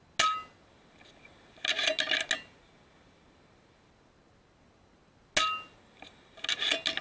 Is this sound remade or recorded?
recorded